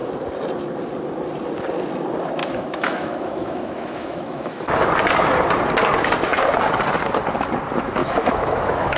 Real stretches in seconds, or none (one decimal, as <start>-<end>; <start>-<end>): 0.0-2.4; 4.7-8.0